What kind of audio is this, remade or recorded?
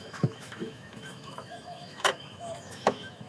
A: remade